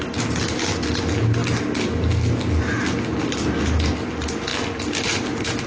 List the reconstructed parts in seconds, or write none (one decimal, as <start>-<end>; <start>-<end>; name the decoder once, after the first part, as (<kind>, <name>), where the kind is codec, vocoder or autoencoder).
none